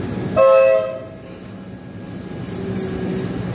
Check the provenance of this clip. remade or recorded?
recorded